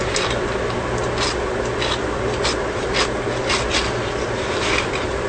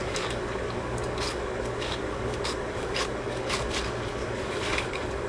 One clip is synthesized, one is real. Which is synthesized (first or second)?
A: second